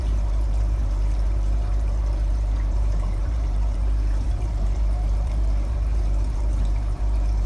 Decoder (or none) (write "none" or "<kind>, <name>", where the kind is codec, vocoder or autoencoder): vocoder, BigVGAN v2